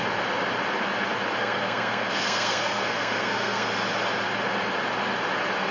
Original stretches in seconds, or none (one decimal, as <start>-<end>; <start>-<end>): 0.0-1.4; 3.7-5.7